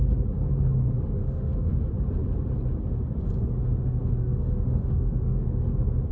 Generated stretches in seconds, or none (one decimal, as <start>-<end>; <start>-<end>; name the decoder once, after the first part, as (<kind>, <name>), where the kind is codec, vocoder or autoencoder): 1.2-1.8 (autoencoder, DAC-VAE); 3.6-5.6